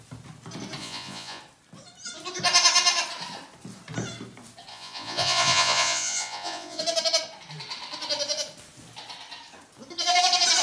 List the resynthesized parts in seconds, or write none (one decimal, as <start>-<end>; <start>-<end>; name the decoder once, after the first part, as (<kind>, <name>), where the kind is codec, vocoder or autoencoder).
0.8-1.4 (vocoder, Vocos); 4.7-6.8